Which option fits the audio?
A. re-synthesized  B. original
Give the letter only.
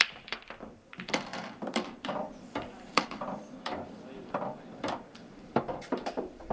A